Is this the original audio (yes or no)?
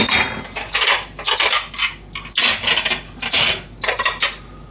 yes